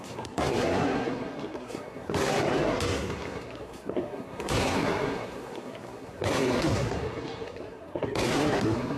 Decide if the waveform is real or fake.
fake